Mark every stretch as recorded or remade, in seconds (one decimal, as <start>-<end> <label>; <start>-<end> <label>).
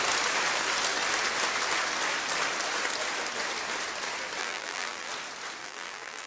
0.0-4.4 recorded; 4.4-5.1 remade; 5.1-5.6 recorded; 5.6-6.3 remade